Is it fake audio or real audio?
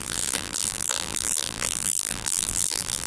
fake